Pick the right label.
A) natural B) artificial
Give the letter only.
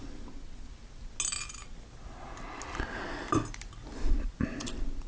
A